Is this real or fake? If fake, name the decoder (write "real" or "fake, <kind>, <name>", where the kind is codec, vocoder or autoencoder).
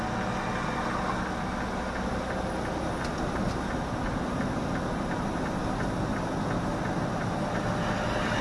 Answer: real